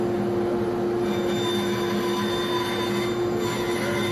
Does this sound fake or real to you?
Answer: real